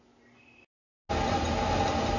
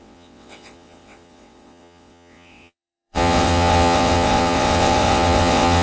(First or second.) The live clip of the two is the first